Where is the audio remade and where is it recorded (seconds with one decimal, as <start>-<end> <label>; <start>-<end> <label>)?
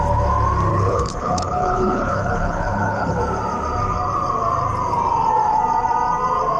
0.0-0.7 recorded; 0.7-3.2 remade; 3.2-6.6 recorded